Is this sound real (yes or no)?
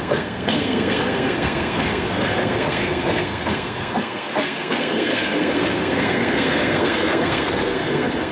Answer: no